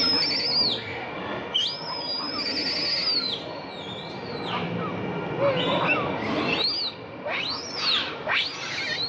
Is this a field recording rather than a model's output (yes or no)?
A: yes